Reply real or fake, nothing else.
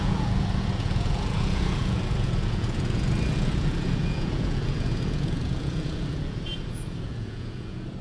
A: fake